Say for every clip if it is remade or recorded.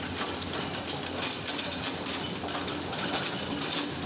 recorded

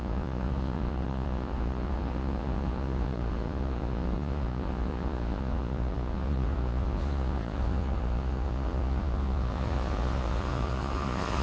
remade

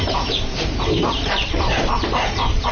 remade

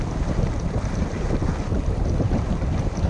recorded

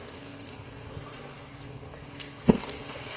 remade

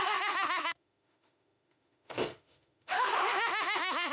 remade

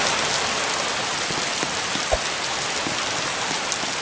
recorded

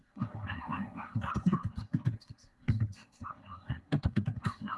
remade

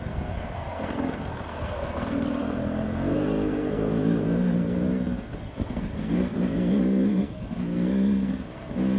remade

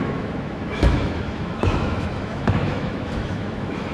remade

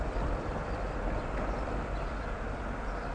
recorded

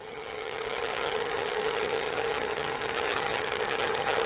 remade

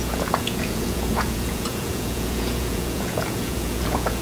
remade